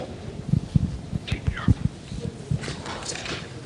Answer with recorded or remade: recorded